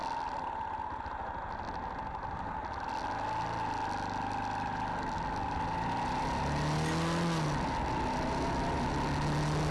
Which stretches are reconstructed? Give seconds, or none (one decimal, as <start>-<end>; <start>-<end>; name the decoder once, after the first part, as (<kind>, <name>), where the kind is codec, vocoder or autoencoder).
none